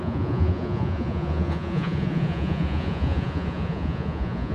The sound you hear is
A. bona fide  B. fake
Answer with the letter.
B